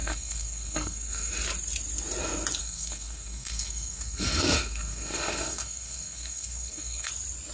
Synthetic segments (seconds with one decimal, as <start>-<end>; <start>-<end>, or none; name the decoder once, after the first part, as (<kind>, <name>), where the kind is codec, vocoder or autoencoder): 0.0-1.3 (codec, SNAC); 2.6-7.1